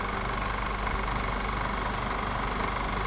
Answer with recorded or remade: recorded